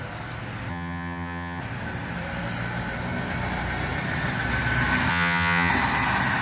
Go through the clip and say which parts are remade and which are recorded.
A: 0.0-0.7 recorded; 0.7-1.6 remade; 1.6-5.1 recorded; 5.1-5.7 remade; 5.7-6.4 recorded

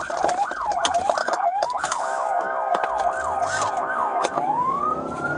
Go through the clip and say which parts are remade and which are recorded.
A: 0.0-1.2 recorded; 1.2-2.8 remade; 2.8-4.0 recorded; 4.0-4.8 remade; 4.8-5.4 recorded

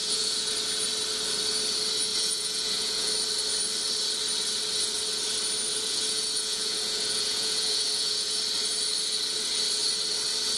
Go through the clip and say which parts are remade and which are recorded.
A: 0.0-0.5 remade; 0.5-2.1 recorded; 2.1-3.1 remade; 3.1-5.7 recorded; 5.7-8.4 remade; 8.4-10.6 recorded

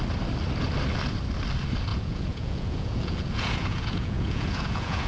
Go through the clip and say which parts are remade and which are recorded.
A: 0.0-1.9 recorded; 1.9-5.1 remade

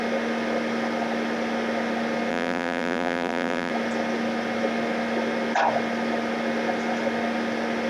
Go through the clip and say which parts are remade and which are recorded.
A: 0.0-2.3 recorded; 2.3-3.7 remade; 3.7-7.9 recorded

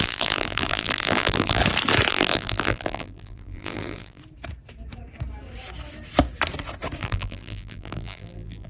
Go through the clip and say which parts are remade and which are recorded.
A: 0.0-1.6 remade; 1.6-2.1 recorded; 2.1-4.2 remade; 4.2-7.0 recorded; 7.0-8.7 remade